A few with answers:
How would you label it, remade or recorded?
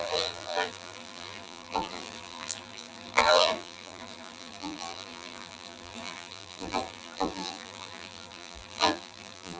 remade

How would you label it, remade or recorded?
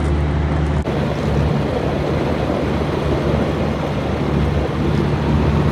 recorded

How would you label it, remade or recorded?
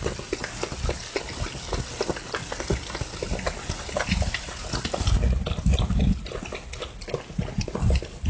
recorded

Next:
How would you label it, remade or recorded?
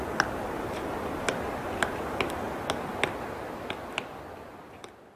recorded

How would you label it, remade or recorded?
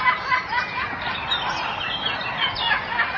recorded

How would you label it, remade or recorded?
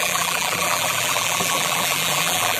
remade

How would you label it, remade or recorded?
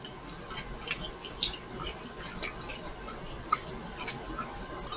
recorded